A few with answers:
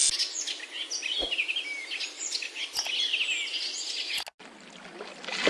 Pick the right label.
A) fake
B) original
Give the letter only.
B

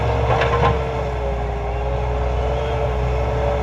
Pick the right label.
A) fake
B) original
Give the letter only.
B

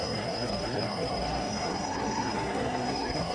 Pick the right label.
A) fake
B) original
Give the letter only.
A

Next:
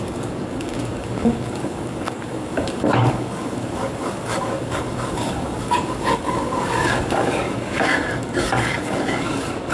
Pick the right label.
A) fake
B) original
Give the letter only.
A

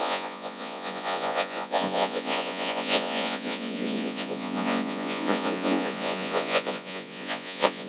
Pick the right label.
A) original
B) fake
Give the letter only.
B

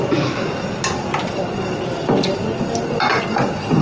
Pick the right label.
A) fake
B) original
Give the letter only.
B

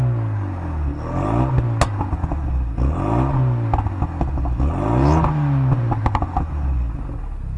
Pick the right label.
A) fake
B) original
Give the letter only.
B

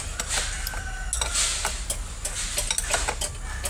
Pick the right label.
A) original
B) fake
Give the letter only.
A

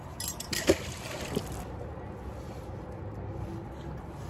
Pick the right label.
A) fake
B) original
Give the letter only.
B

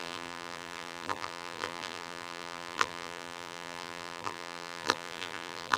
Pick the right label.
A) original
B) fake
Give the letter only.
B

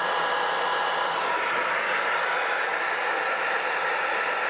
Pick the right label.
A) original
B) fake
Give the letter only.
A